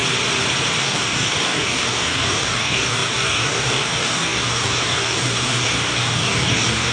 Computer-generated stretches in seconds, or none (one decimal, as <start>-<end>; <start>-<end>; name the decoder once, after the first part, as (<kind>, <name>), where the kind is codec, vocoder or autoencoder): 0.8-6.9 (codec, DAC)